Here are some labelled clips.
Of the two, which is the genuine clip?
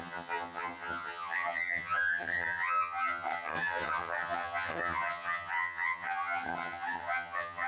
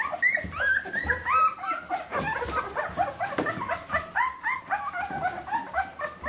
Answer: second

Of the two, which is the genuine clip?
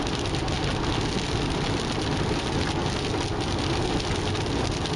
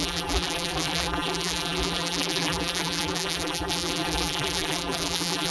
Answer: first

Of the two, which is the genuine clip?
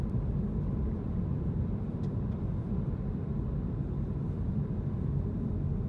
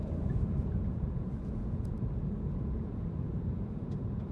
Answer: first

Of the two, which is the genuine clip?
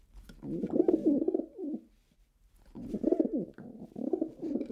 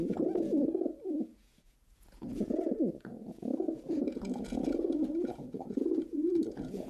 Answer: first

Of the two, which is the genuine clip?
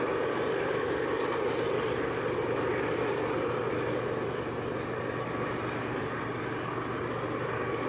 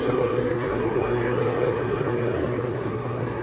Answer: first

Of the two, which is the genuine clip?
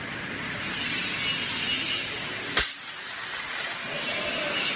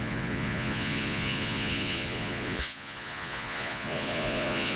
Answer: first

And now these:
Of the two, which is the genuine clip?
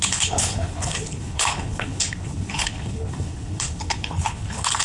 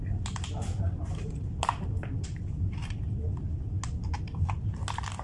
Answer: second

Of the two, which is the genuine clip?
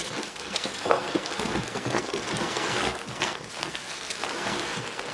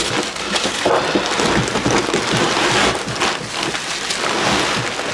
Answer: second